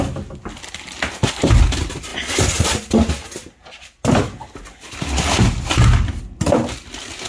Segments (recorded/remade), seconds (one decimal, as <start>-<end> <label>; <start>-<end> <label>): 0.0-7.3 recorded

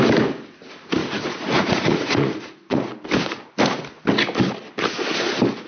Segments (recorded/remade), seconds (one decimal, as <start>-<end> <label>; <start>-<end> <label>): 0.0-1.0 recorded; 1.0-2.8 remade; 2.8-5.7 recorded

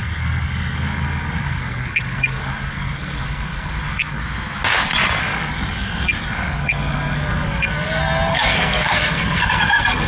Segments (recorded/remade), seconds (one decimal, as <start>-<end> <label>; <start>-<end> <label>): 0.0-4.2 remade; 4.2-5.2 recorded; 5.2-10.1 remade

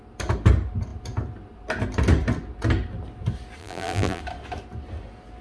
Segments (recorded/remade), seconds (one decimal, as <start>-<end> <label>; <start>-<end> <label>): 0.0-3.6 recorded; 3.6-4.2 remade; 4.2-5.4 recorded

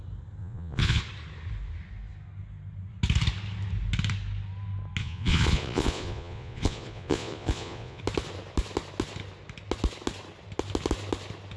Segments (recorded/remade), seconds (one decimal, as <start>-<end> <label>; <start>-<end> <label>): 0.0-0.4 recorded; 0.4-1.0 remade; 1.0-5.0 recorded; 5.0-8.0 remade; 8.0-11.6 recorded